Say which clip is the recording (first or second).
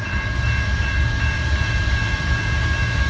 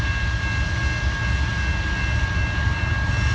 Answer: second